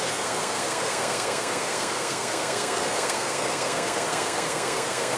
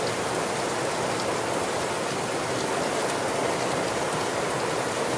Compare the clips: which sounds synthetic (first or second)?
first